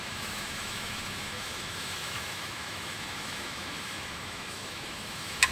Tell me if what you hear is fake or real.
fake